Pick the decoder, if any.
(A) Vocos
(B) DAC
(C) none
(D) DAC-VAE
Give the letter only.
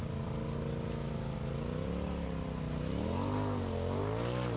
C